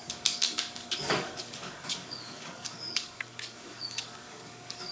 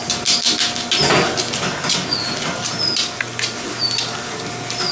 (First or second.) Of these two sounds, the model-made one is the first